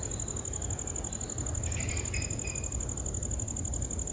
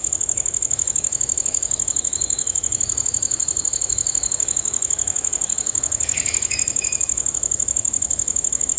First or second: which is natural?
first